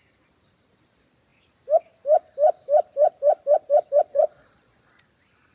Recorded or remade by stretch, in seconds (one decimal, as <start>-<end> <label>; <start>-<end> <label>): 0.0-4.1 recorded; 4.1-5.0 remade; 5.0-5.5 recorded